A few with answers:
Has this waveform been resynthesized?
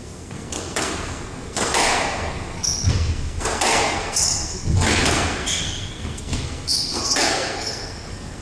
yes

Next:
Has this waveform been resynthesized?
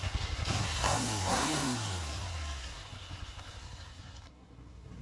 yes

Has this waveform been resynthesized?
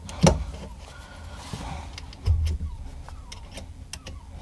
no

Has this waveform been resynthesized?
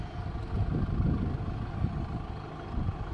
no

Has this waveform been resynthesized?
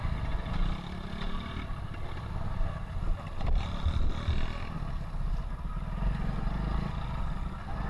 no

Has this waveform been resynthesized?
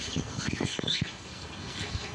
yes